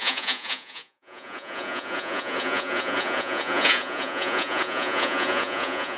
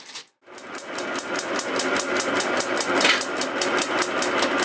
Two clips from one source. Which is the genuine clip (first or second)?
second